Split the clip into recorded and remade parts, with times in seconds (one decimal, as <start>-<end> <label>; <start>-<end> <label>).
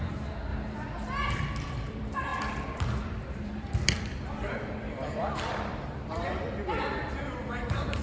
0.0-0.5 remade; 0.5-1.3 recorded; 1.3-8.0 remade